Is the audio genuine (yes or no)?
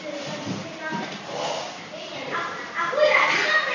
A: yes